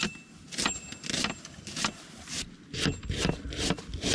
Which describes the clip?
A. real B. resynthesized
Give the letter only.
A